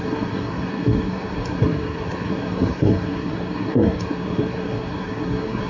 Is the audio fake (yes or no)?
yes